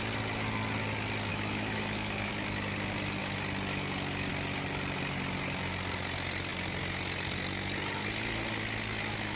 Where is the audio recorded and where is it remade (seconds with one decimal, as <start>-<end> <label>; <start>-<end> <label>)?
0.0-1.3 recorded; 1.3-2.3 remade; 2.3-9.4 recorded

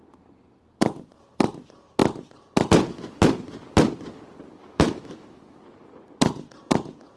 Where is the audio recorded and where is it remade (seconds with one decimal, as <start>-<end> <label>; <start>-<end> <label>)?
0.0-4.6 recorded; 4.6-5.6 remade; 5.6-7.2 recorded

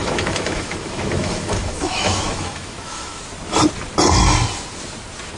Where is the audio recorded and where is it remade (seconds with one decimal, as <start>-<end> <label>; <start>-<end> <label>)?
0.0-3.2 remade; 3.2-5.4 recorded

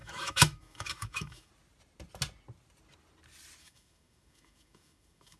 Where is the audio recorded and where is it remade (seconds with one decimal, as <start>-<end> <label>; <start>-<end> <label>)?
0.0-1.5 remade; 1.5-3.6 recorded; 3.6-5.4 remade